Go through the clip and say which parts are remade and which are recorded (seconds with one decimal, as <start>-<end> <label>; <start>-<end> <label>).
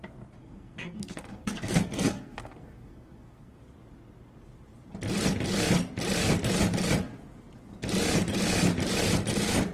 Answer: 0.0-0.4 recorded; 0.4-3.6 remade; 3.6-9.7 recorded